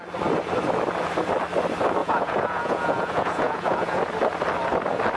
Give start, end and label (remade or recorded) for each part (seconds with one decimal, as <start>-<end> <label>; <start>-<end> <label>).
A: 0.0-2.0 recorded; 2.0-4.0 remade; 4.0-5.2 recorded